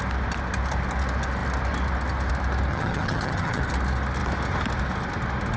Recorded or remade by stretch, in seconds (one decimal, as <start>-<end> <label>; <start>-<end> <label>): 0.0-2.7 recorded; 2.7-3.6 remade; 3.6-5.6 recorded